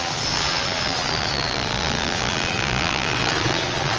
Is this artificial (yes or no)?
yes